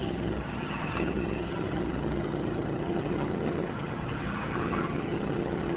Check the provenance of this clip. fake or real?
fake